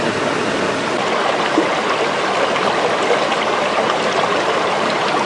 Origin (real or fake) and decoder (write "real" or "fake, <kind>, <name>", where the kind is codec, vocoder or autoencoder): real